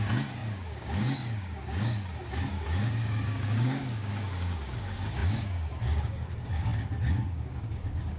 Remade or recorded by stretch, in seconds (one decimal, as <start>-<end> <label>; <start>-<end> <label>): 0.0-8.2 remade